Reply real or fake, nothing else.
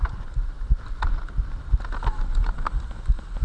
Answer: real